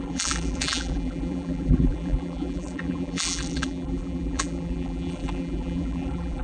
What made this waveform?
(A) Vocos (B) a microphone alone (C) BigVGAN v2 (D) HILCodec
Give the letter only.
C